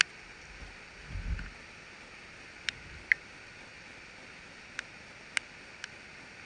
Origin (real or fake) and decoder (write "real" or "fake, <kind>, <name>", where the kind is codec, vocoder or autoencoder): real